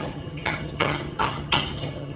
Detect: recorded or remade remade